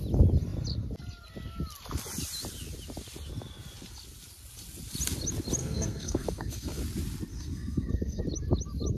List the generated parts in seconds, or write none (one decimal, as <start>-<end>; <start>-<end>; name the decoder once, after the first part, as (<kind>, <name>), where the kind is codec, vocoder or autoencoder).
5.6-6.8 (codec, SNAC); 7.3-8.2